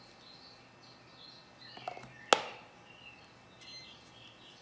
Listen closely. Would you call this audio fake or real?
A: real